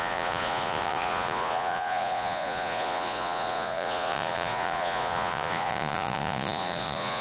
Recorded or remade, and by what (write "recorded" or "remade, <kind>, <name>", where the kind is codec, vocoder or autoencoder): remade, vocoder, Vocos